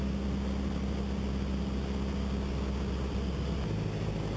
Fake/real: real